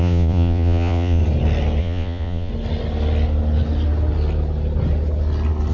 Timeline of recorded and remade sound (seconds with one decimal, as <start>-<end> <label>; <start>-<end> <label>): 0.0-1.2 remade; 1.2-1.8 recorded; 1.8-2.5 remade; 2.5-5.7 recorded